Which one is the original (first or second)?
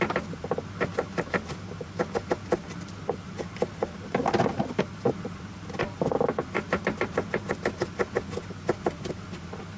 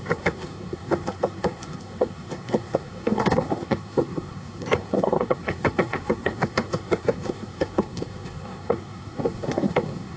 first